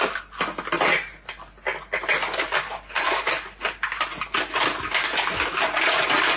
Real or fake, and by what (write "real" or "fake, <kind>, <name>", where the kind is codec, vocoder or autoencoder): real